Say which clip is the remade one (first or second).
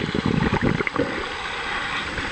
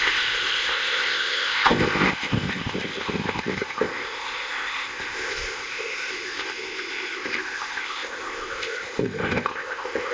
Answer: second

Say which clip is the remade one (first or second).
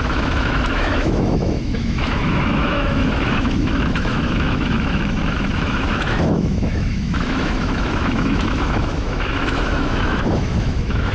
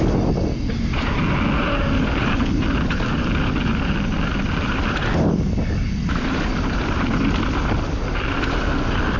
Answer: first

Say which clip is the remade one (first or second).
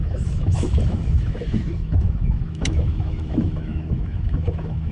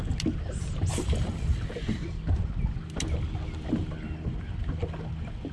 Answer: first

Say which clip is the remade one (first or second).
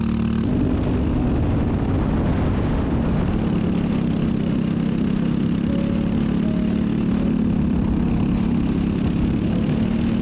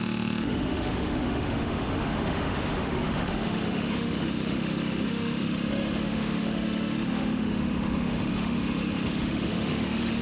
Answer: second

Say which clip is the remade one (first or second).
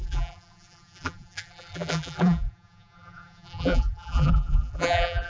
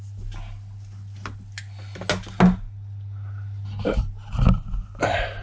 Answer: first